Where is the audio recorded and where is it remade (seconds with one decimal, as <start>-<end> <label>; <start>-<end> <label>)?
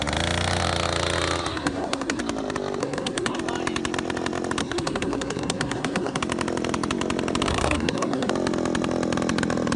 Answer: 0.0-1.5 recorded; 1.5-2.2 remade; 2.2-2.8 recorded; 2.8-3.4 remade; 3.4-4.6 recorded; 4.6-6.2 remade; 6.2-7.5 recorded; 7.5-8.3 remade; 8.3-9.8 recorded